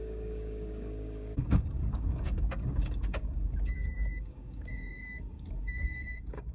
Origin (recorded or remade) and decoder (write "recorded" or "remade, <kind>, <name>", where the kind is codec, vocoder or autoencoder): remade, codec, DAC